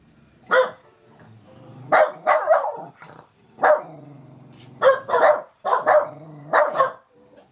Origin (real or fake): fake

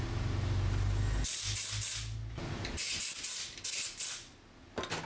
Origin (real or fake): real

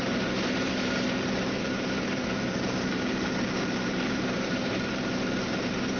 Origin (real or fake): fake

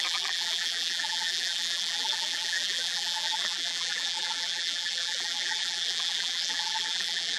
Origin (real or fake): fake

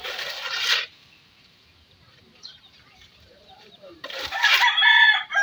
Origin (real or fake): fake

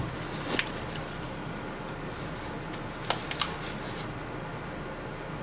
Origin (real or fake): real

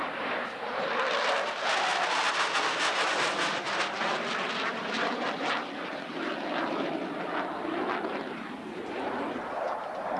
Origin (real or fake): fake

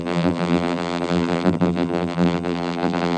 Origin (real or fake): fake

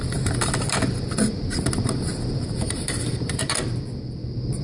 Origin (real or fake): fake